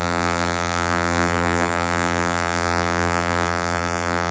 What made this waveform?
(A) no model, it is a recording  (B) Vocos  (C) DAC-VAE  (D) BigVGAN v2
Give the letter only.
D